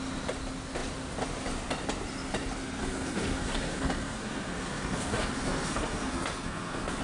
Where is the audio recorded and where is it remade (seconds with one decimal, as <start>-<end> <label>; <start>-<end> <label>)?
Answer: 0.0-2.8 recorded; 2.8-7.0 remade